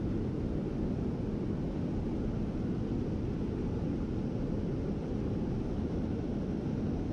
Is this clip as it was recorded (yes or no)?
yes